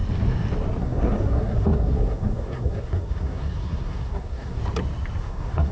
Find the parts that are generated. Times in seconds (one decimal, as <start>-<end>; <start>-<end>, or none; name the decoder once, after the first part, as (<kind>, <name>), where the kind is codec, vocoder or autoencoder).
0.8-4.6 (codec, SNAC); 5.2-5.7